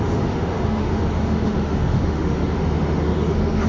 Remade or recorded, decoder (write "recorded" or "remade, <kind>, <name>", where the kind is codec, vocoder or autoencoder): remade, autoencoder, DAC-VAE